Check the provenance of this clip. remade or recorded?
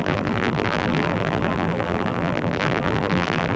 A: remade